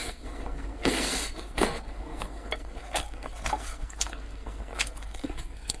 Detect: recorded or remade remade